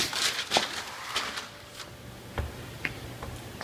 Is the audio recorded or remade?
recorded